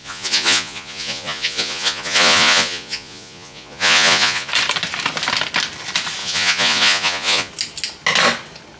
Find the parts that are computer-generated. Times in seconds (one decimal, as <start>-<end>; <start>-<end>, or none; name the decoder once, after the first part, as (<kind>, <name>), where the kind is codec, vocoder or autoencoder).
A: 0.0-4.5 (vocoder, Vocos); 6.2-7.5